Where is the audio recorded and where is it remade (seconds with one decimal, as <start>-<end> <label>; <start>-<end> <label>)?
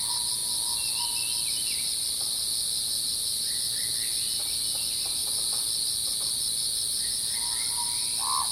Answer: 0.0-8.5 recorded